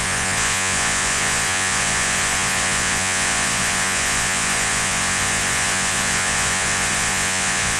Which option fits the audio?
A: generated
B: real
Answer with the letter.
A